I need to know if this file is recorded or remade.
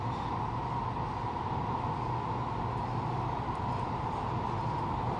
recorded